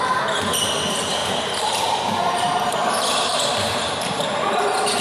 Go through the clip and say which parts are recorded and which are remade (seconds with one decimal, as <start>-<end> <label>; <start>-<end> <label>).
0.0-1.2 recorded; 1.2-4.2 remade; 4.2-5.0 recorded